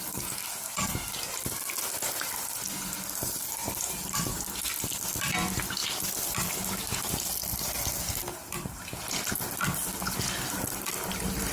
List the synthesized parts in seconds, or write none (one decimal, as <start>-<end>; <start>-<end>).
3.6-4.5; 8.3-9.0